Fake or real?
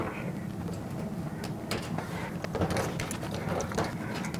real